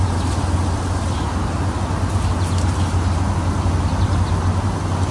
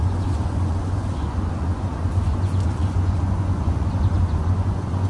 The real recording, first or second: first